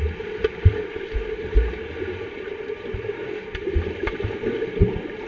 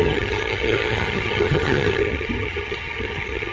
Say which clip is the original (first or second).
first